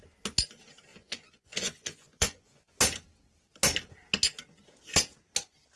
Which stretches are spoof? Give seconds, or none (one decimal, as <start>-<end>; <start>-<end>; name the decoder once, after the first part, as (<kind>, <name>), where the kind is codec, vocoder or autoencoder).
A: 0.9-2.8 (vocoder, Vocos)